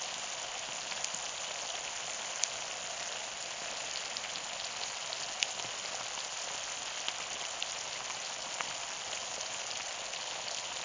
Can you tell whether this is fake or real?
real